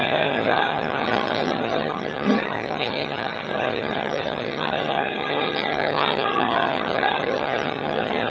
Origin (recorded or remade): remade